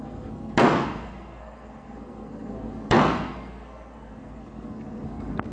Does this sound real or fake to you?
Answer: fake